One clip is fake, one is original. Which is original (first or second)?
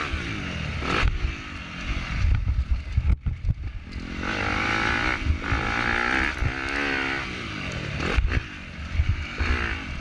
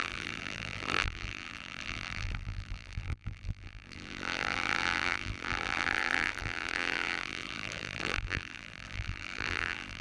first